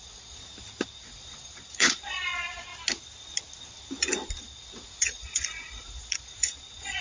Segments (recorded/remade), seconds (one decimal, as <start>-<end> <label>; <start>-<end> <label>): 0.0-0.4 remade; 0.4-1.0 recorded; 1.0-2.7 remade; 2.7-4.4 recorded; 4.4-7.0 remade